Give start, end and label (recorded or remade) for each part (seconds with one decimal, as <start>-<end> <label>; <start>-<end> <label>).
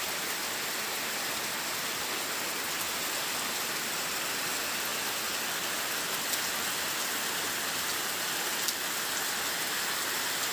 0.0-10.5 recorded